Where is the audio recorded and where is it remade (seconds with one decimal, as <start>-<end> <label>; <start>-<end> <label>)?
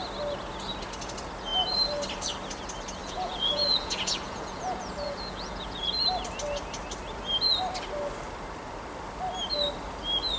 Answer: 0.0-3.0 recorded; 3.0-5.9 remade; 5.9-10.4 recorded